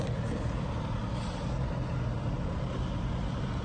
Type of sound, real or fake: real